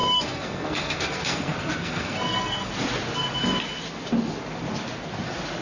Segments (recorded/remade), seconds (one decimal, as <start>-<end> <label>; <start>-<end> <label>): 0.0-2.7 remade; 2.7-5.6 recorded

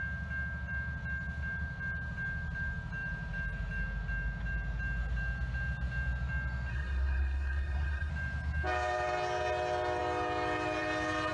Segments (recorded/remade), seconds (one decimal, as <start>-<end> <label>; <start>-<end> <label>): 0.0-6.7 recorded; 6.7-8.1 remade; 8.1-11.3 recorded

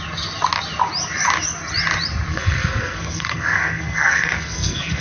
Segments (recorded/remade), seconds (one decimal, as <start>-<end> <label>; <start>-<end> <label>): 0.0-2.3 recorded; 2.3-5.0 remade

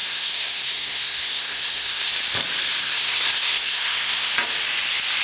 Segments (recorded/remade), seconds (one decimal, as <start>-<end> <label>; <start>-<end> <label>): 0.0-2.1 remade; 2.1-2.8 recorded; 2.8-4.3 remade; 4.3-5.2 recorded

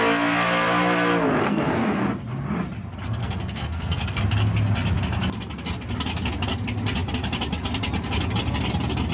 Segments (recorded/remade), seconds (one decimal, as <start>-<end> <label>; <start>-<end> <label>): 0.0-1.4 recorded; 1.4-2.0 remade; 2.0-3.2 recorded; 3.2-4.2 remade; 4.2-9.1 recorded

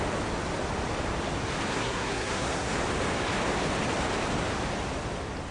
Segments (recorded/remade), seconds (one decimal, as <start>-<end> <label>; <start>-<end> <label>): 0.0-1.7 recorded; 1.7-2.7 remade; 2.7-5.5 recorded